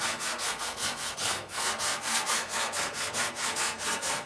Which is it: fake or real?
fake